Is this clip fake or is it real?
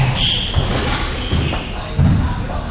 real